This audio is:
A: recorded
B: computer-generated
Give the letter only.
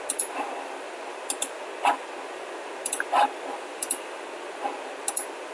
A